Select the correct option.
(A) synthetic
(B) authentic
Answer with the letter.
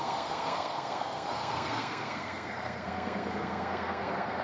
A